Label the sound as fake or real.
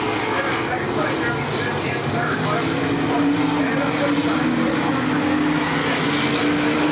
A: real